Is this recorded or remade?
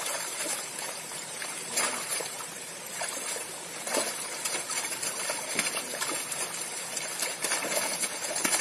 remade